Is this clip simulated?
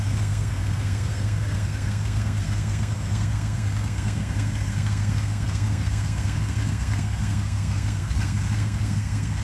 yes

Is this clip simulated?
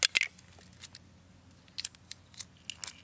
no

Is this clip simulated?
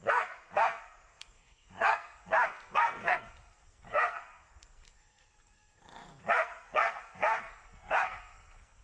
yes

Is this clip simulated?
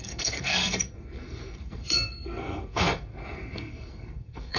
yes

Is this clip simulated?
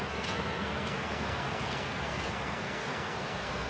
yes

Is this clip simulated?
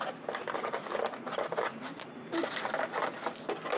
no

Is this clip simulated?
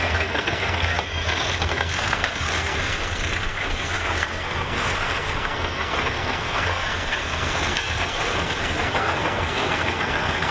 yes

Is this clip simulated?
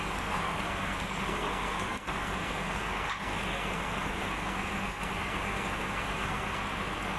yes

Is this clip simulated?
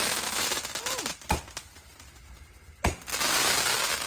no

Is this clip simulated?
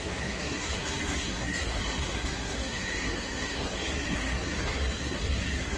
yes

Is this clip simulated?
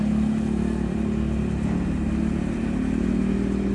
no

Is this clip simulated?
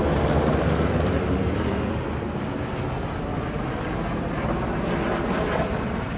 no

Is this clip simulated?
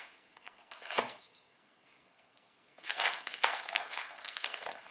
yes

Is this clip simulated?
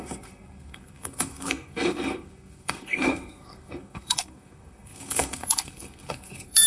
yes